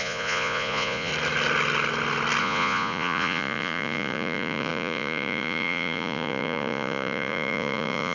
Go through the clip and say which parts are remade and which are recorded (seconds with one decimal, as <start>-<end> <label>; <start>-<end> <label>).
0.0-1.1 remade; 1.1-2.4 recorded; 2.4-8.1 remade